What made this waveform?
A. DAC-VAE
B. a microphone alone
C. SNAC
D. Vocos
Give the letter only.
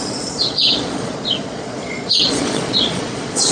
D